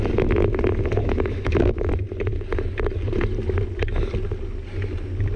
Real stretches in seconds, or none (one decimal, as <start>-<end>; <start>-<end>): 0.0-1.0; 1.9-5.4